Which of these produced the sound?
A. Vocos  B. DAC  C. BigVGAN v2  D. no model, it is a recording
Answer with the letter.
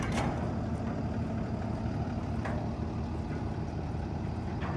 D